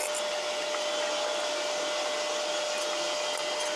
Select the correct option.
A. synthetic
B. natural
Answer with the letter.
B